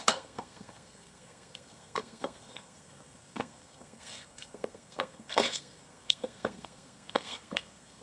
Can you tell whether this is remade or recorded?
remade